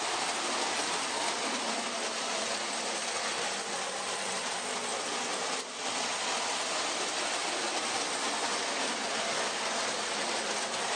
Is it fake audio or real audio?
real